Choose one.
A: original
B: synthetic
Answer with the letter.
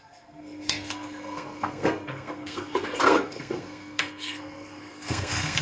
B